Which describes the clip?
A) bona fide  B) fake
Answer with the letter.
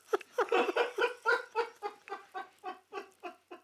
A